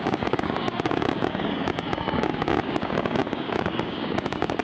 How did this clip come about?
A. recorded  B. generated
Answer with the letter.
B